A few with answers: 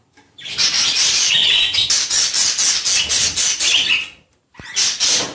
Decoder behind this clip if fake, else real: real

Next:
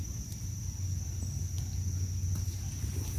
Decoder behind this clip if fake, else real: real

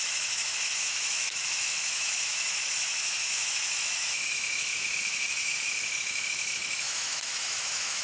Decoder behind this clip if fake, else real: fake, autoencoder, DAC-VAE